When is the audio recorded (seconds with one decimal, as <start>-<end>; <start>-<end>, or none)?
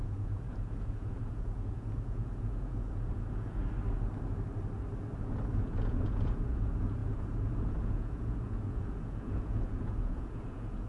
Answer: 3.6-5.6